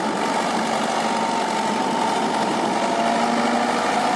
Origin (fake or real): real